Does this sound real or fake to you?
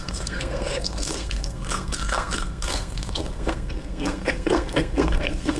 fake